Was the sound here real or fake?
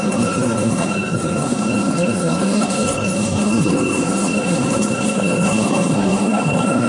fake